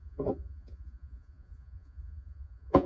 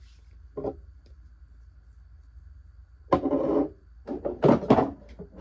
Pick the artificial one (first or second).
first